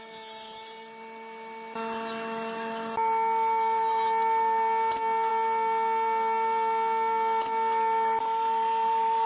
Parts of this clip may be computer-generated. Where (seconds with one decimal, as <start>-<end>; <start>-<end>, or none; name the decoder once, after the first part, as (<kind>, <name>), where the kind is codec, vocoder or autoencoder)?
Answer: none